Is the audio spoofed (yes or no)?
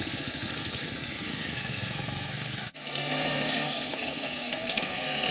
yes